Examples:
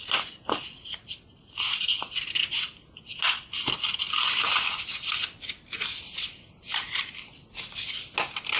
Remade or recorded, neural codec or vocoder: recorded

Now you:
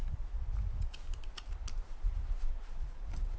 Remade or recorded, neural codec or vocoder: recorded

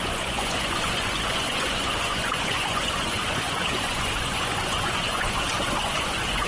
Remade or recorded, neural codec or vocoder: remade, vocoder, Vocos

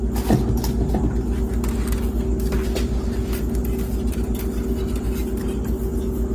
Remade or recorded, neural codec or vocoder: recorded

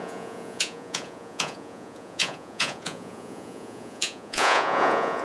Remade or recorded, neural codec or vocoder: remade, vocoder, Vocos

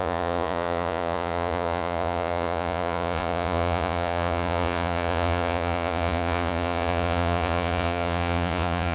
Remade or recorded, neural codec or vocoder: remade, vocoder, Vocos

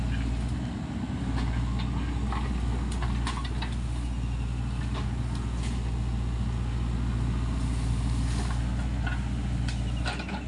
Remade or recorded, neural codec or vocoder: recorded